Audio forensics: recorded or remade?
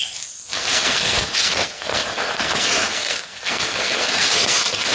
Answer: remade